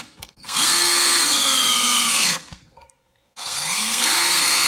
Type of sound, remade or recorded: remade